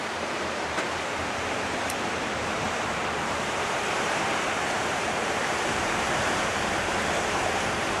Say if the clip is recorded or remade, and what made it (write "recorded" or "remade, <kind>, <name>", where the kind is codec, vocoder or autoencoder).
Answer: remade, vocoder, BigVGAN v2